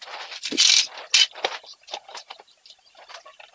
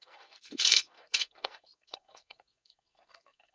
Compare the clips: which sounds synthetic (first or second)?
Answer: second